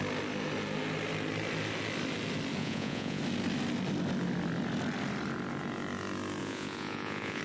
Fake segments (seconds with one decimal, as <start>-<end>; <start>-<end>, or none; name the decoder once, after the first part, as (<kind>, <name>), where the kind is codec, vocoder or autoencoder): 2.6-3.2 (vocoder, Vocos); 6.4-7.4